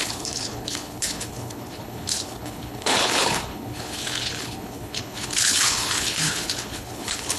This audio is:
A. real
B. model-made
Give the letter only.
B